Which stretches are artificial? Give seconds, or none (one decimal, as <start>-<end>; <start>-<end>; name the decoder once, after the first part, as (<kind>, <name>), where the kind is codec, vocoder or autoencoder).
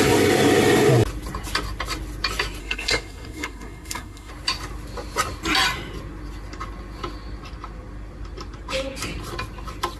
2.6-4.3 (codec, SNAC)